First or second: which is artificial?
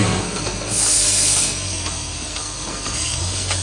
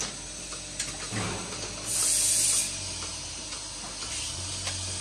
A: first